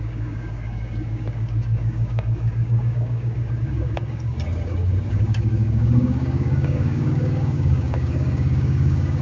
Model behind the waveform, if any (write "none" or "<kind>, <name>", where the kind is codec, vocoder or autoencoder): codec, DAC